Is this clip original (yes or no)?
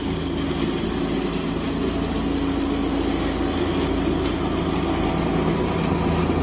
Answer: yes